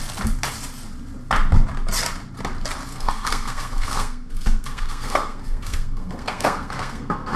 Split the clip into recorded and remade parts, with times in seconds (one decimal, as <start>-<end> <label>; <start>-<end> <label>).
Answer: 0.0-2.9 recorded; 2.9-7.4 remade